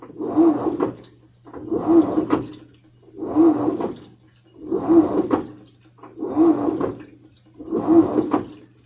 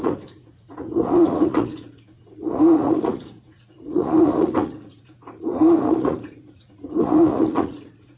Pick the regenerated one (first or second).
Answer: second